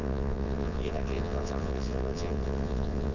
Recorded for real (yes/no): no